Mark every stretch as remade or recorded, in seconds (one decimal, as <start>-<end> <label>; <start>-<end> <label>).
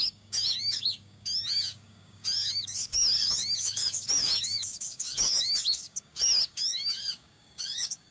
0.0-8.1 remade